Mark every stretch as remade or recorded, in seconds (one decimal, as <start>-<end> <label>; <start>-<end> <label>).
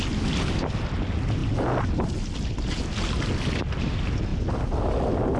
0.0-5.4 recorded